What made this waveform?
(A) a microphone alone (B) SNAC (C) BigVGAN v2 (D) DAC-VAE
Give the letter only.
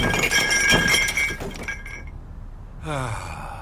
A